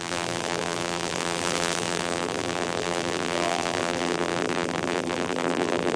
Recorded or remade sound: remade